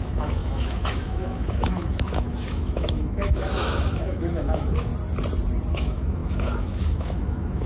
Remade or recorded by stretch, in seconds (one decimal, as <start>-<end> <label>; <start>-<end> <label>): 0.0-4.9 remade; 4.9-5.7 recorded; 5.7-7.7 remade